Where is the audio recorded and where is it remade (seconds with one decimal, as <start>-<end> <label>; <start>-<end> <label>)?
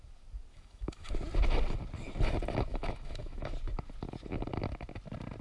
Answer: 0.0-0.5 recorded; 0.5-1.1 remade; 1.1-2.7 recorded; 2.7-3.5 remade; 3.5-5.4 recorded